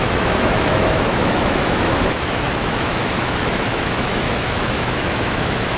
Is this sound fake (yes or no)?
yes